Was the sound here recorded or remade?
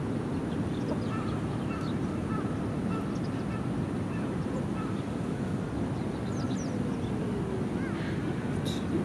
recorded